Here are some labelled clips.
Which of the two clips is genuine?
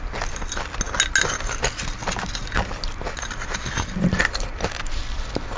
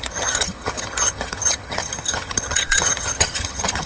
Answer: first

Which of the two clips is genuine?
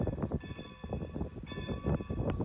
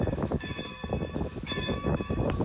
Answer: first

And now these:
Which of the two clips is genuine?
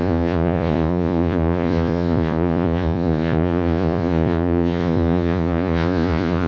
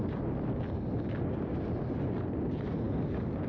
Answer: second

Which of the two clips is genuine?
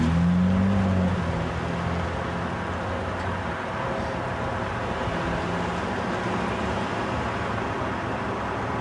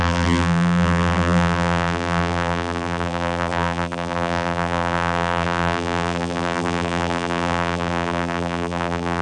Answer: first